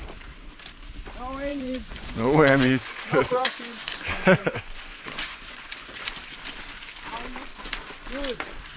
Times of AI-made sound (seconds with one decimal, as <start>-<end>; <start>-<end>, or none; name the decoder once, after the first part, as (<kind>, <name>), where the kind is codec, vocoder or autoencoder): 1.5-6.1 (vocoder, Vocos); 7.5-8.1